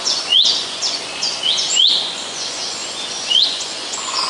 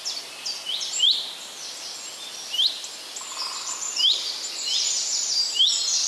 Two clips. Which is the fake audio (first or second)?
first